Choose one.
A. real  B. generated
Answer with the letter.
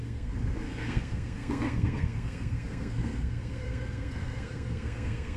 B